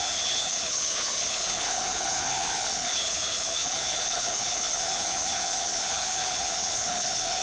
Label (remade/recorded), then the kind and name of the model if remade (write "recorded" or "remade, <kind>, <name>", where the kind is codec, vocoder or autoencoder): remade, codec, HILCodec